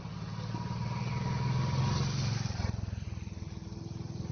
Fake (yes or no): no